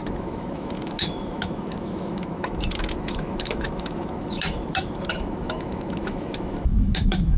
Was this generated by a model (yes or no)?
yes